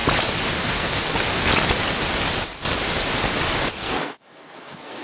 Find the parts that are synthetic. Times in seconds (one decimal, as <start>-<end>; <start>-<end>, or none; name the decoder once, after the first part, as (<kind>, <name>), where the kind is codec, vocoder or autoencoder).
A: 0.7-1.5 (codec, SNAC); 3.7-5.0